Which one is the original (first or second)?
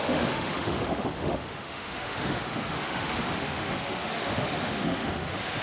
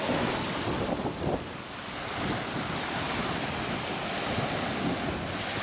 second